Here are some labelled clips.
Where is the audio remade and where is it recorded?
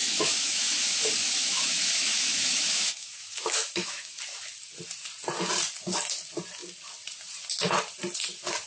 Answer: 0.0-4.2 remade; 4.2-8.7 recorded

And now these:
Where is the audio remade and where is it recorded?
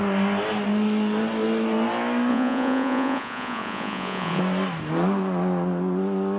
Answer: 0.0-2.3 recorded; 2.3-4.4 remade; 4.4-6.4 recorded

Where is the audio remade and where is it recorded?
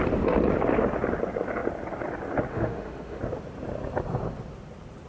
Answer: 0.0-2.5 recorded; 2.5-3.2 remade; 3.2-5.1 recorded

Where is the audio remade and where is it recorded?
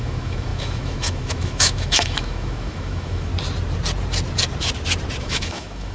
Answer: 0.0-3.3 remade; 3.3-5.2 recorded; 5.2-5.9 remade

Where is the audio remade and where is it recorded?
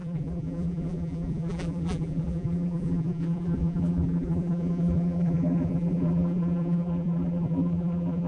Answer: 0.0-8.3 remade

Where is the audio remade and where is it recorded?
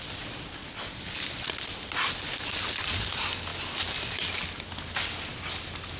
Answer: 0.0-6.0 recorded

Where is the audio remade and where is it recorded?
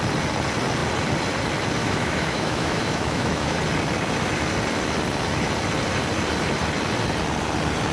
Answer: 0.0-1.8 recorded; 1.8-3.6 remade; 3.6-7.9 recorded